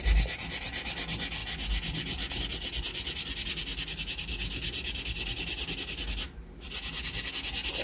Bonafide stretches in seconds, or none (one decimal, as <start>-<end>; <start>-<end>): 0.0-7.8